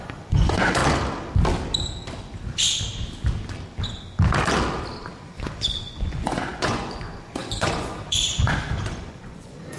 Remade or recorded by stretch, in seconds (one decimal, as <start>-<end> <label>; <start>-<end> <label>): 0.0-0.8 remade; 0.8-5.2 recorded; 5.2-9.8 remade